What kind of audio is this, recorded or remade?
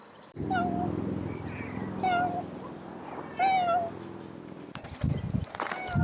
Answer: recorded